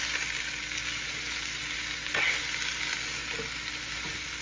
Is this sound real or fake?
real